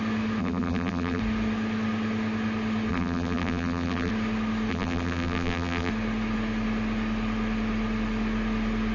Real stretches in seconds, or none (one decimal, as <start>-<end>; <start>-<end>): 0.0-0.4; 1.2-2.9; 4.1-4.7; 5.9-8.9